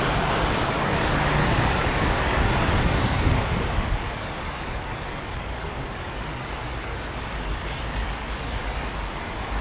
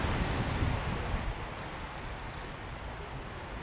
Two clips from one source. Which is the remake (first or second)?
first